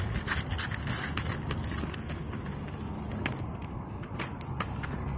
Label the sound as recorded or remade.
recorded